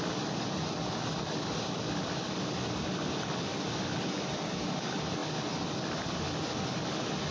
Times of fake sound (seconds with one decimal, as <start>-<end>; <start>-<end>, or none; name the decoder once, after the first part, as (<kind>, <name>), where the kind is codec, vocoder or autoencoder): none